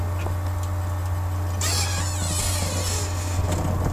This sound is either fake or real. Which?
real